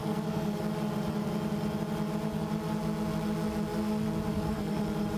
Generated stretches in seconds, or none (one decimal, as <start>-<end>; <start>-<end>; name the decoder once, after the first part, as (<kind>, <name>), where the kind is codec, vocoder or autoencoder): 0.0-0.6 (codec, SNAC); 4.3-4.8